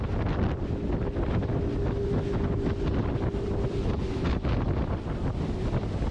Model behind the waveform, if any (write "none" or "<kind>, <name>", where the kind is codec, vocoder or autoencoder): none